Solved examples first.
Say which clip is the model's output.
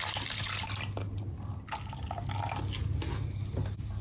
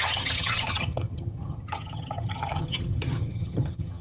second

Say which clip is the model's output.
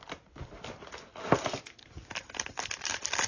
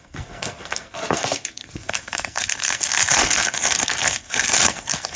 second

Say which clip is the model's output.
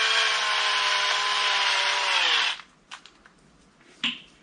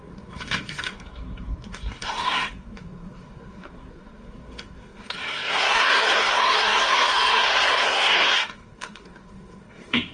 second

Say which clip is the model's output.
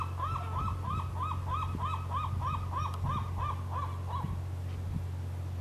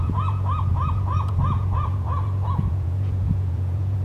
second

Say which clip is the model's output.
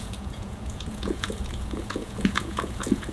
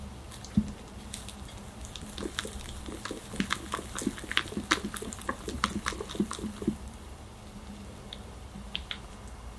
first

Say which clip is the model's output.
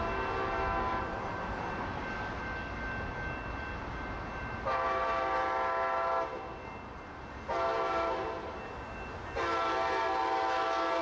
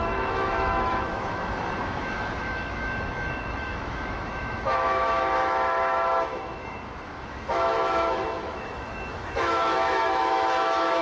second